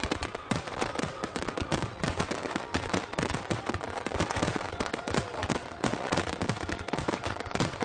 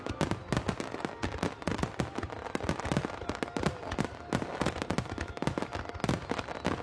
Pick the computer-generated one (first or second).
first